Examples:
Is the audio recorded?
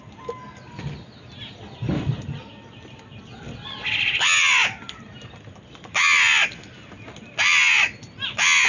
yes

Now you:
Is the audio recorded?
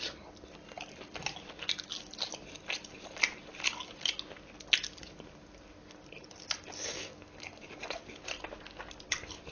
yes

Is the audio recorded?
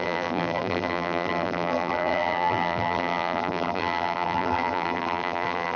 no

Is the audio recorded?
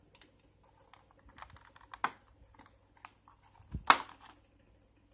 yes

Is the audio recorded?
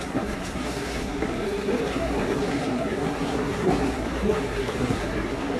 no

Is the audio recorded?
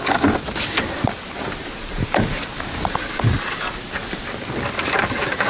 yes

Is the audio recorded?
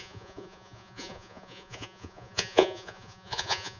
no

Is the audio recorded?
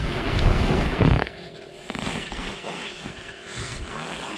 no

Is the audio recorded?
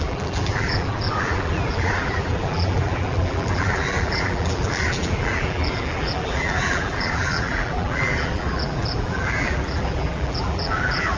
no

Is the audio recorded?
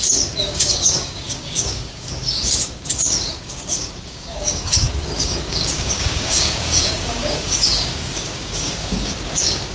no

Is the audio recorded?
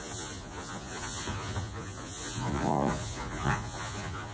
no